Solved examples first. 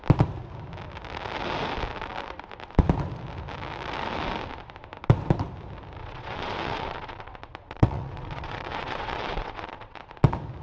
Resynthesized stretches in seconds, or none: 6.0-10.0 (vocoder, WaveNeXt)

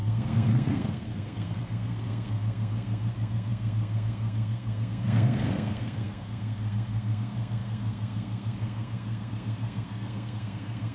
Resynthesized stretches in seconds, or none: 0.0-10.9 (codec, SNAC)

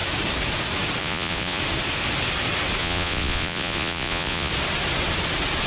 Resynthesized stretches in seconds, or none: 1.0-1.6 (vocoder, Vocos); 2.8-4.5